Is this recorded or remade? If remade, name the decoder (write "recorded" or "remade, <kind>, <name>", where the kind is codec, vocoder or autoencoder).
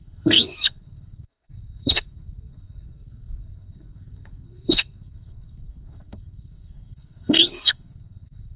remade, codec, SNAC